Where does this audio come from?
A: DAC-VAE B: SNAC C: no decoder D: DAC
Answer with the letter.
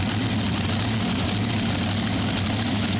C